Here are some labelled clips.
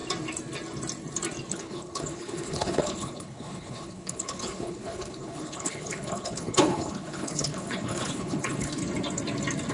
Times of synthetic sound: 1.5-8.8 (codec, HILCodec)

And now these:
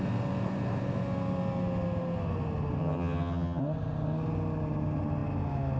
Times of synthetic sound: 2.8-3.6 (vocoder, HiFi-GAN)

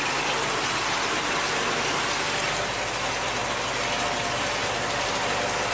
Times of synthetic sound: 4.6-5.1 (vocoder, BigVGAN v2)

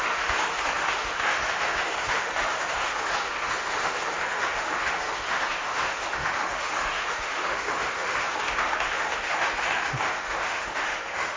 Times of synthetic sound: 0.0-11.4 (autoencoder, DAC-VAE)

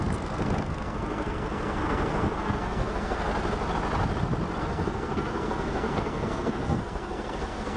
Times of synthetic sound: 0.0-3.3 (codec, SNAC); 4.6-7.8

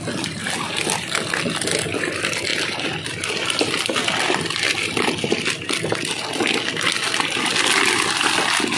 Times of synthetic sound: none

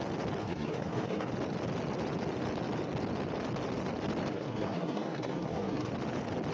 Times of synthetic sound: 0.4-1.3 (codec, SNAC); 4.3-5.9